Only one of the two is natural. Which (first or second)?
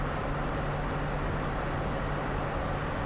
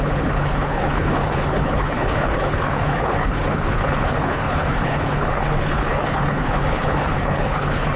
first